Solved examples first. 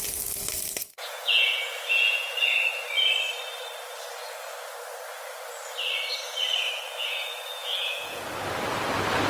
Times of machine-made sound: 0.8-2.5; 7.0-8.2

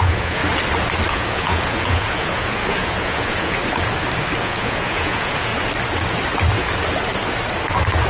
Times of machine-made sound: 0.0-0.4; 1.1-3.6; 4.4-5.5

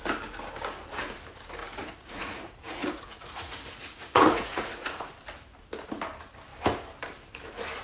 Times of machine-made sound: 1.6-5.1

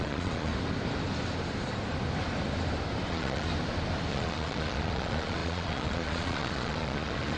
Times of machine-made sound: 0.0-0.5; 3.1-3.5; 4.1-7.4